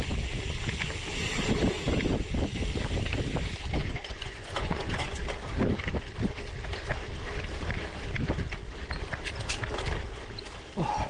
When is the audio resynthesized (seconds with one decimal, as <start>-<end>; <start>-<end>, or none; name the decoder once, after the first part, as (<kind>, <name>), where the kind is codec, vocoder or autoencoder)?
3.8-5.2 (vocoder, Vocos)